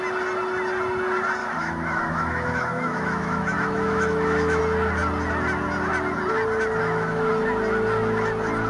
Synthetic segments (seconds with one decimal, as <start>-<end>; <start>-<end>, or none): 1.4-4.6; 6.8-7.3